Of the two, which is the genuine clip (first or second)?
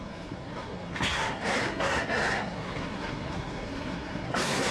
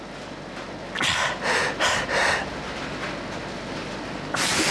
second